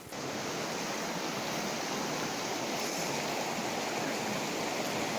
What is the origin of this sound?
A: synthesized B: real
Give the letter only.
B